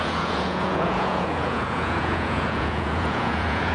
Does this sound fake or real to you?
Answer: fake